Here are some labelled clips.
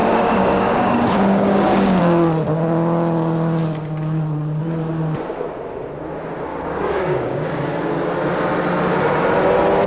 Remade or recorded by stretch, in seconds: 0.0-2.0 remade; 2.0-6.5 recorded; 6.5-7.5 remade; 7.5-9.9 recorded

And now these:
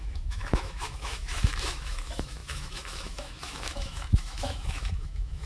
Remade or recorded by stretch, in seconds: 0.0-5.5 remade

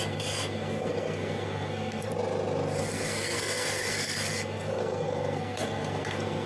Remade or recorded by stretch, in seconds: 0.0-2.1 remade; 2.1-2.8 recorded; 2.8-6.5 remade

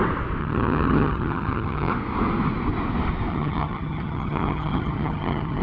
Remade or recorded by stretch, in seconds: 0.0-0.4 recorded; 0.4-1.9 remade; 1.9-3.3 recorded; 3.3-5.6 remade

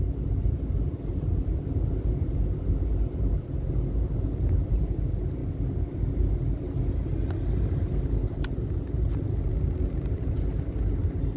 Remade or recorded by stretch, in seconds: 0.0-11.4 recorded

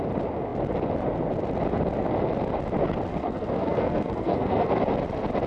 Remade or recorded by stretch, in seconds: 0.0-3.1 recorded; 3.1-4.8 remade; 4.8-5.5 recorded